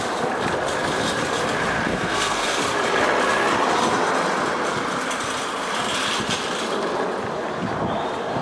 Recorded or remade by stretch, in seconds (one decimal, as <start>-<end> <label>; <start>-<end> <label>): 0.0-1.9 recorded; 1.9-2.6 remade; 2.6-8.4 recorded